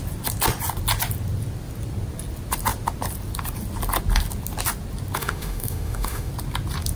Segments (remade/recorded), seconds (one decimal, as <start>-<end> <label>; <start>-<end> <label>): 0.0-5.2 recorded; 5.2-6.3 remade; 6.3-7.0 recorded